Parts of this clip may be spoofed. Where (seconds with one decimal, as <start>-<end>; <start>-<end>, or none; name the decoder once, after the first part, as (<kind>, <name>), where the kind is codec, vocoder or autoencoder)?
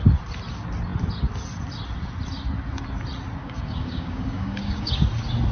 3.4-4.9 (codec, DAC)